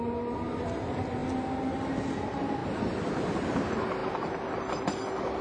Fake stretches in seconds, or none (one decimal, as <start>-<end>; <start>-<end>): 2.6-3.6